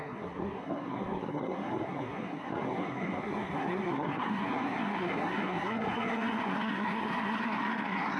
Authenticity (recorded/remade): remade